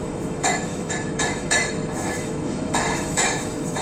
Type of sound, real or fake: fake